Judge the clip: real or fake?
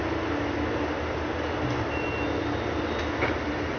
real